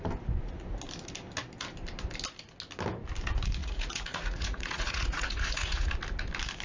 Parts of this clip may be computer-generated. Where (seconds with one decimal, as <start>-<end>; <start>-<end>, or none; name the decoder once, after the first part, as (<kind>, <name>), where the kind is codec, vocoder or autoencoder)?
3.6-5.9 (vocoder, Vocos)